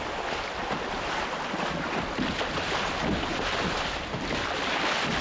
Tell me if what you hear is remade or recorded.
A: recorded